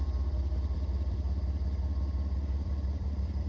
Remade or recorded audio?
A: remade